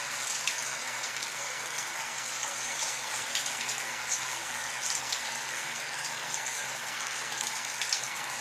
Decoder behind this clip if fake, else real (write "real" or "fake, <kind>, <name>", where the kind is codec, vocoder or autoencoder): fake, codec, SNAC